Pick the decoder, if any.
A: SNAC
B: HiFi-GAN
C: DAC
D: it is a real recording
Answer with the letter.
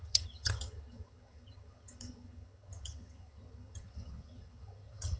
B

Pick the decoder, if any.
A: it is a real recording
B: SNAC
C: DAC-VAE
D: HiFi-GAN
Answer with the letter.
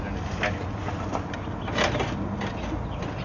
A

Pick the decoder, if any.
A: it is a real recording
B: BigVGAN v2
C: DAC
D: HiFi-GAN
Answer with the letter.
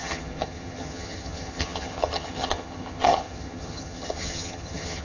D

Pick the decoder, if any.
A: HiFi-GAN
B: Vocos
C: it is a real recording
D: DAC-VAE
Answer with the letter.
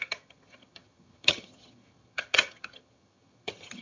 A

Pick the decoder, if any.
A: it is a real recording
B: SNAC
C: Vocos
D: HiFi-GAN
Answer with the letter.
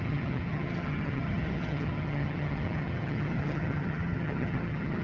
D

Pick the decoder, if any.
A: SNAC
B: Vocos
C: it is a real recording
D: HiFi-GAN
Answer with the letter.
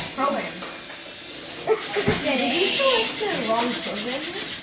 C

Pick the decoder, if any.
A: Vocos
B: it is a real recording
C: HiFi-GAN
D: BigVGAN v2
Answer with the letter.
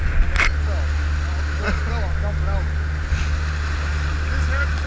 B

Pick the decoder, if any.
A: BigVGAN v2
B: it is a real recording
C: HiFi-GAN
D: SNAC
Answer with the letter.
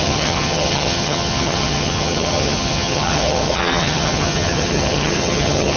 C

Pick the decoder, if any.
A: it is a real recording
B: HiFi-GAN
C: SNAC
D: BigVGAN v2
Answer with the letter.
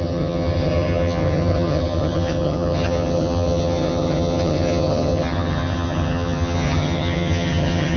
B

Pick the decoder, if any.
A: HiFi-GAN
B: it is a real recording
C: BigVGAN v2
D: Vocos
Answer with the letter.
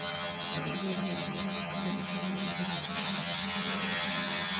A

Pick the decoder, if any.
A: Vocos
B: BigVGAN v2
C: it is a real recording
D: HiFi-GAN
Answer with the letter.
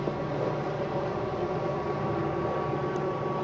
C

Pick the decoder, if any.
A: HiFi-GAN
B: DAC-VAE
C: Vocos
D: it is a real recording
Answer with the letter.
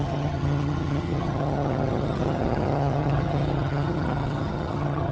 A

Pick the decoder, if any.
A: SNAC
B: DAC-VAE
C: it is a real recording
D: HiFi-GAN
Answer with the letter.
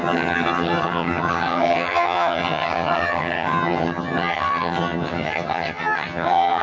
D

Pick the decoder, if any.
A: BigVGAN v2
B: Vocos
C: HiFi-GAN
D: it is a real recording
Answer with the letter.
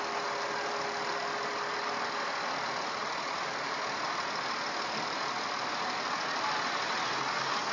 D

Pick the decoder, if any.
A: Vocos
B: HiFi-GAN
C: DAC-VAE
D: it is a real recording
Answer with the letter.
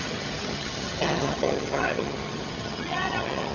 B